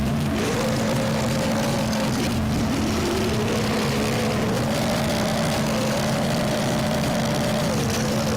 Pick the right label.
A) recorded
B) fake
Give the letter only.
A